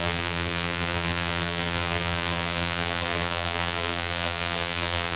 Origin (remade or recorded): remade